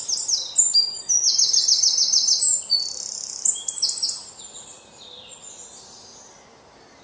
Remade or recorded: recorded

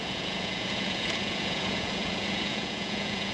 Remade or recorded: remade